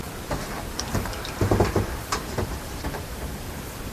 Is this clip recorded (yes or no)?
no